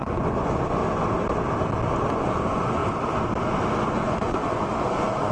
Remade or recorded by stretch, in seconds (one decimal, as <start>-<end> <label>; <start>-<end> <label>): 0.0-0.8 remade; 0.8-2.1 recorded; 2.1-2.8 remade; 2.8-3.8 recorded; 3.8-5.3 remade